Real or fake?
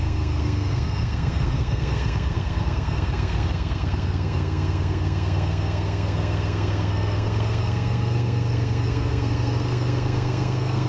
fake